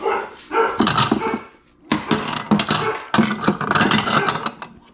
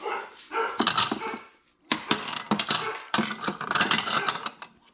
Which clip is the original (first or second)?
first